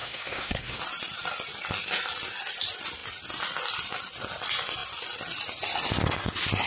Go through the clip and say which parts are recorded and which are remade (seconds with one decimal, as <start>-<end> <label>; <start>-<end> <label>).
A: 0.0-0.8 remade; 0.8-6.7 recorded